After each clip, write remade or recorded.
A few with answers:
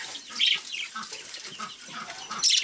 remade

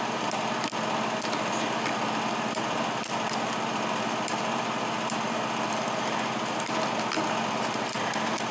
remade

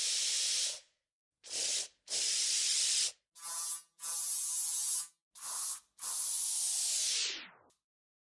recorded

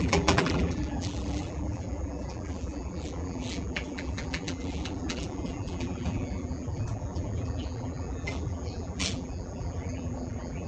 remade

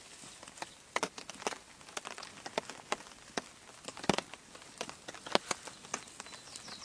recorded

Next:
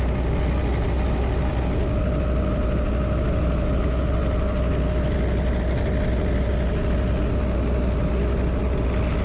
recorded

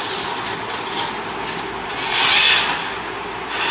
recorded